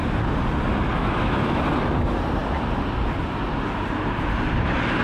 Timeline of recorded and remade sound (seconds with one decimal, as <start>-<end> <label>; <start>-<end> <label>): 0.0-1.0 recorded; 1.0-1.6 remade; 1.6-5.0 recorded